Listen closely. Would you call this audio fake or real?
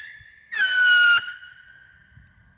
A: real